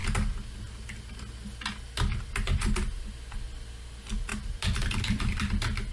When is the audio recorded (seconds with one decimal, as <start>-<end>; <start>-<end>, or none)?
0.0-4.3; 5.5-5.9